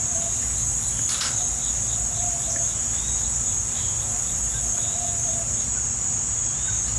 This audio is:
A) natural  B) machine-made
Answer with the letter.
A